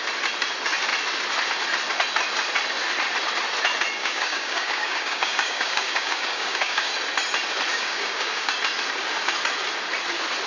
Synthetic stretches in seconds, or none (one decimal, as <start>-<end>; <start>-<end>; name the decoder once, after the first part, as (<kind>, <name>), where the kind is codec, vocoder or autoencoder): 4.0-6.9 (codec, DAC); 7.7-8.5